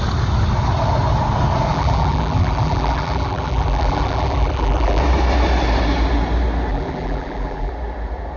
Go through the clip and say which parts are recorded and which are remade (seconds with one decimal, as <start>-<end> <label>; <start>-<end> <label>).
0.0-1.7 recorded; 1.7-5.0 remade; 5.0-6.7 recorded; 6.7-7.7 remade; 7.7-8.4 recorded